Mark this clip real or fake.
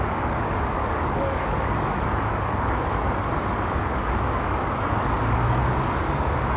fake